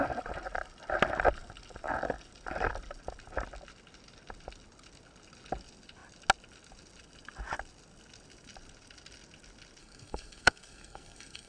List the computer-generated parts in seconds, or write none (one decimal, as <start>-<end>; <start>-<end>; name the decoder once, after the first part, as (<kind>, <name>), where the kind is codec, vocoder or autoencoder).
9.8-11.5 (codec, SNAC)